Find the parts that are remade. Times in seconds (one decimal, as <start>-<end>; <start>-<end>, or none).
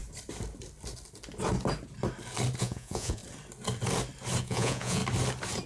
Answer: 2.6-3.2; 4.4-5.0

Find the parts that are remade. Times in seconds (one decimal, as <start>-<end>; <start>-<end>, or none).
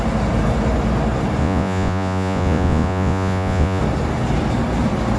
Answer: 1.4-3.8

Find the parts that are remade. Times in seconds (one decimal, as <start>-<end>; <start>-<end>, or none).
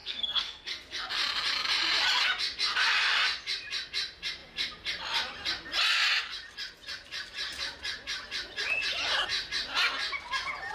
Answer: 0.0-1.1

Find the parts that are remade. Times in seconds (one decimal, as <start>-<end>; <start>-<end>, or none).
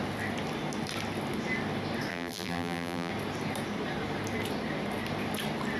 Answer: 2.1-3.1